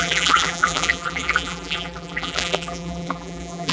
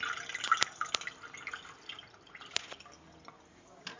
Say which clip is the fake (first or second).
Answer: first